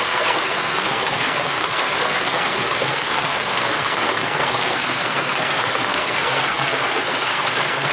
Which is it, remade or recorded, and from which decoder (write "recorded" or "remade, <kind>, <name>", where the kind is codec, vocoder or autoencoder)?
remade, codec, SNAC